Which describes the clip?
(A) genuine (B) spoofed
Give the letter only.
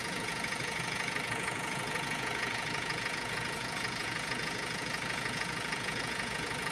B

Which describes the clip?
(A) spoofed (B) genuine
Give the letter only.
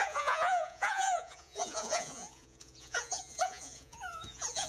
A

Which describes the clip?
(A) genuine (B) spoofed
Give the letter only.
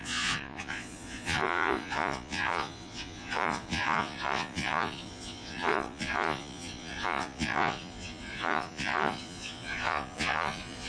B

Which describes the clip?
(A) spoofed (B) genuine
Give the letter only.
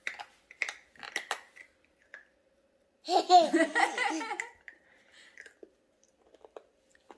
B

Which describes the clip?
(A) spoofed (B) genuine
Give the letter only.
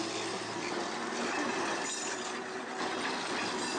B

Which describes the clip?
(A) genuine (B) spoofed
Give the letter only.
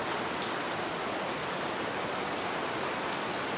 A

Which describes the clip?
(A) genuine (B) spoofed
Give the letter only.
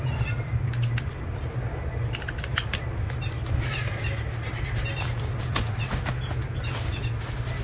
A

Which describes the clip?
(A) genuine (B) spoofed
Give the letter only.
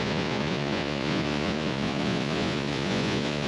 B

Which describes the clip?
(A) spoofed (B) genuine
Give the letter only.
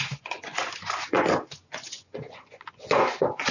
A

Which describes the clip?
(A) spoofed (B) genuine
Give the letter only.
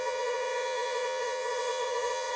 A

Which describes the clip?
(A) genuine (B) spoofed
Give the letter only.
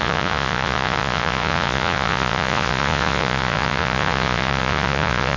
B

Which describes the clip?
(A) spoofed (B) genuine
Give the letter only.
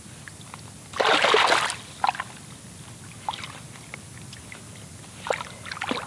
B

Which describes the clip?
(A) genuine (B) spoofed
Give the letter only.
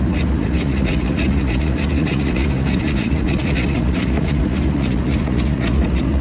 B